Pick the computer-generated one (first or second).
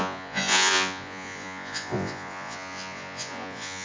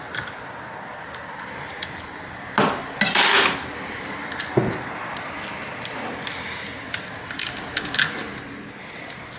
first